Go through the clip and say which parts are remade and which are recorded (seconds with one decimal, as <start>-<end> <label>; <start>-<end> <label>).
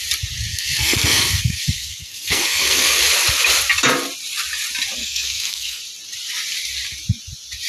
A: 0.0-0.5 recorded; 0.5-3.0 remade; 3.0-5.0 recorded; 5.0-5.8 remade; 5.8-7.7 recorded